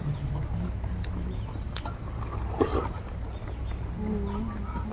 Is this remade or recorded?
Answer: recorded